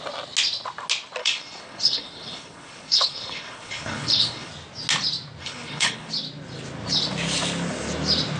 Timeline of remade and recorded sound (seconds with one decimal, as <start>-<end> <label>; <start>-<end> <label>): 0.0-1.2 recorded; 1.2-4.5 remade; 4.5-5.4 recorded; 5.4-6.1 remade; 6.1-8.4 recorded